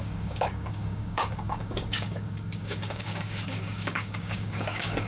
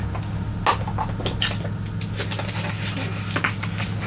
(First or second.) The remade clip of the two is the first